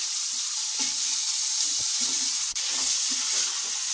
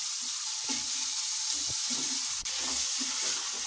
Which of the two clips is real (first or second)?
first